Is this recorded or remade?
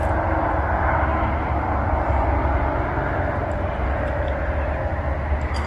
recorded